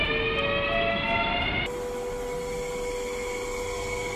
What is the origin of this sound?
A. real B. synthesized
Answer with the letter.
A